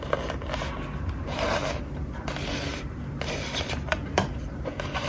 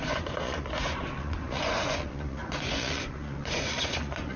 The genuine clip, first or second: first